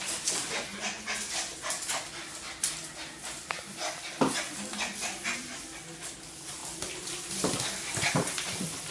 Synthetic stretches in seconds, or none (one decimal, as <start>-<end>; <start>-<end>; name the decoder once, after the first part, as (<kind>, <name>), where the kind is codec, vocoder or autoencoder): 0.7-1.3 (vocoder, Vocos)